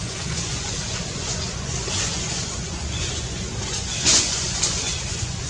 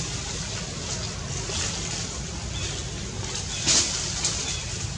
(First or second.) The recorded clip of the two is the second